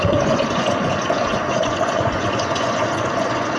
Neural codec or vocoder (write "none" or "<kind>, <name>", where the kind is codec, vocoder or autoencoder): vocoder, Vocos